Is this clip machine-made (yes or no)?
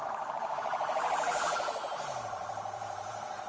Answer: yes